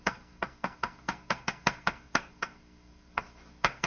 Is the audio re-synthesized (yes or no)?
yes